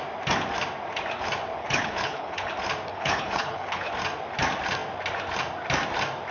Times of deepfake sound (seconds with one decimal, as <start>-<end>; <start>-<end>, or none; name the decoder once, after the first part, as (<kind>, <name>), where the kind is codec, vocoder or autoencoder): 1.6-2.5 (codec, HILCodec); 2.9-3.9